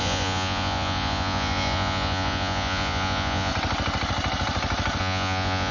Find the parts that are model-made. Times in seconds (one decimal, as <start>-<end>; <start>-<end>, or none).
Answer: 0.0-3.5; 5.0-5.7